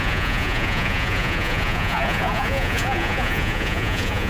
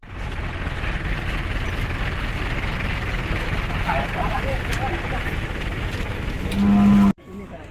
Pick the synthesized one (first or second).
first